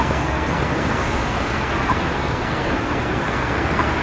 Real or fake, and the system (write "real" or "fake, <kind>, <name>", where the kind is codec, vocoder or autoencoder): fake, codec, SNAC